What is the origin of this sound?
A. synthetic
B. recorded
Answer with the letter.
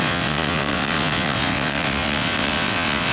A